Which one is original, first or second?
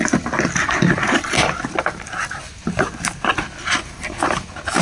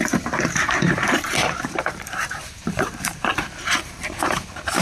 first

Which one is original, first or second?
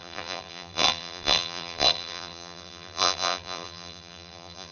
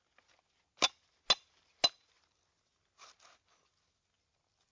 second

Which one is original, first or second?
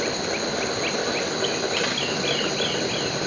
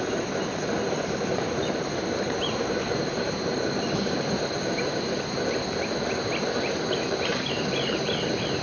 first